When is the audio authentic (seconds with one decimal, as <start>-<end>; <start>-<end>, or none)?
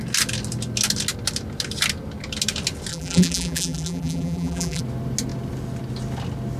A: 0.0-2.9; 4.8-6.6